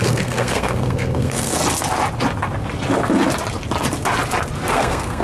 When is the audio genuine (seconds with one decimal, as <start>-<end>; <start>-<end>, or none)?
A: 1.6-4.7